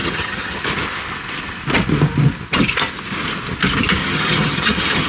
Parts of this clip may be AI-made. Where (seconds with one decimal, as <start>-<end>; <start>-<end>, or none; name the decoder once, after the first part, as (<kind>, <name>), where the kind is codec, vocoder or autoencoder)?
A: 0.0-0.6 (vocoder, HiFi-GAN); 4.0-5.1